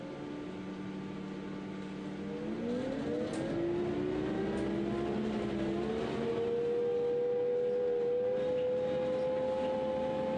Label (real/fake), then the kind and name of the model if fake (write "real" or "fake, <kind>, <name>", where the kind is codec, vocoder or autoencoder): real